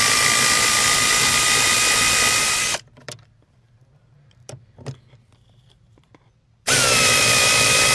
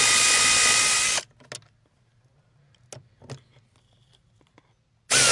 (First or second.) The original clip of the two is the second